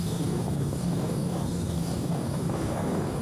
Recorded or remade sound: remade